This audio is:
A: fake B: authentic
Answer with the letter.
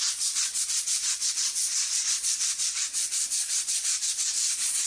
A